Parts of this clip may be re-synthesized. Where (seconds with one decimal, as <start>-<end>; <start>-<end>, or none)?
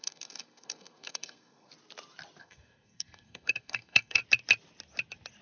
0.0-1.7; 2.4-4.2